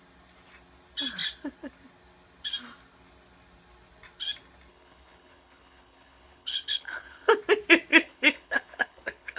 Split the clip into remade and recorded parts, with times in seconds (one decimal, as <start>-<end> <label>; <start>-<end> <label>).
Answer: 0.0-4.7 recorded; 4.7-7.3 remade; 7.3-7.9 recorded; 7.9-9.4 remade